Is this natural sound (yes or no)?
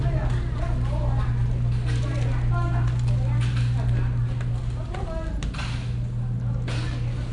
yes